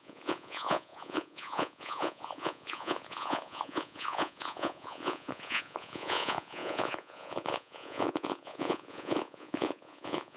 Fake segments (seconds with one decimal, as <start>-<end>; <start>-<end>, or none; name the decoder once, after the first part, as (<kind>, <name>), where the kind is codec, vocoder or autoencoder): 0.0-10.4 (vocoder, Vocos)